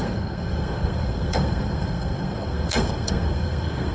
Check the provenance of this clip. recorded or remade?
remade